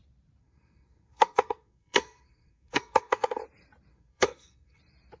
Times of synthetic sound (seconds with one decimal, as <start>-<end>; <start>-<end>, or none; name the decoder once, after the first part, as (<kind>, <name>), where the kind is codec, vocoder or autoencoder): 0.4-3.4 (codec, SNAC); 3.9-4.8